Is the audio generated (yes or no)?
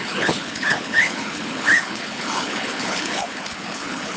yes